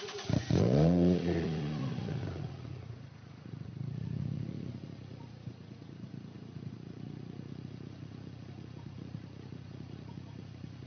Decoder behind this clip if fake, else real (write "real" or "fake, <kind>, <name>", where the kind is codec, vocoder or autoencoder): fake, vocoder, Vocos